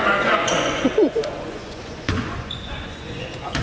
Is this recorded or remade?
remade